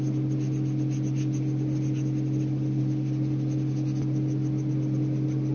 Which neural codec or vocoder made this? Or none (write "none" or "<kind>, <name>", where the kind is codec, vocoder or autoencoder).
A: none